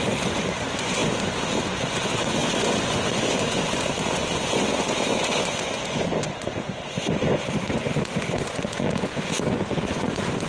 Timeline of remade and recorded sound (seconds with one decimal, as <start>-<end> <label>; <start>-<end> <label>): 0.0-10.5 remade

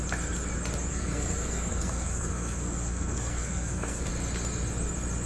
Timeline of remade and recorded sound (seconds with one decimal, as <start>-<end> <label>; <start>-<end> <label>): 0.0-0.9 recorded; 0.9-4.1 remade; 4.1-5.3 recorded

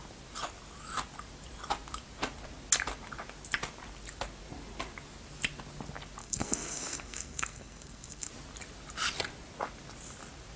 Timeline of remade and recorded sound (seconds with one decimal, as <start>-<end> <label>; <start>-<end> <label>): 0.0-6.2 recorded; 6.2-8.3 remade; 8.3-10.6 recorded

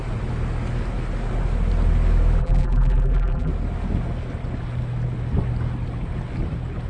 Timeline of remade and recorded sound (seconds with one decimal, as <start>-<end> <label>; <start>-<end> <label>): 0.0-2.4 recorded; 2.4-3.5 remade; 3.5-6.9 recorded

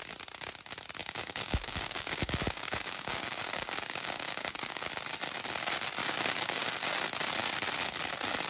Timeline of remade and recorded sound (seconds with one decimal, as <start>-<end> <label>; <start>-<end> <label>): 0.0-1.0 recorded; 1.0-4.9 remade; 4.9-6.0 recorded; 6.0-6.7 remade; 6.7-8.5 recorded